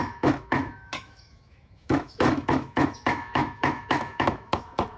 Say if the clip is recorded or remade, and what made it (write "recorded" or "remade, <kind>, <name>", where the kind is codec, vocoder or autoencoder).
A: remade, autoencoder, DAC-VAE